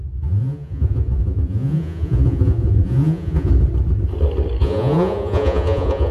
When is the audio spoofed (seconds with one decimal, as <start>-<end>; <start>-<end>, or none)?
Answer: 0.0-3.5; 4.6-6.1